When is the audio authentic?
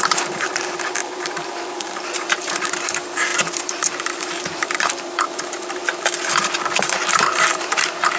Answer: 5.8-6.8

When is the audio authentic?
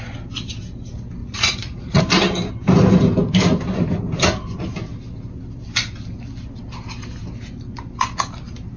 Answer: 0.0-1.2; 2.0-8.8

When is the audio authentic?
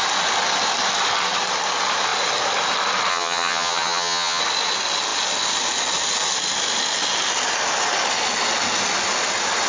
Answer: 0.0-3.1; 4.4-9.7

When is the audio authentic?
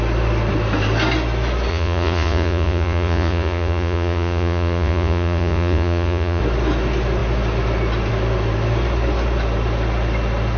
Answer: 0.0-1.7; 6.4-10.6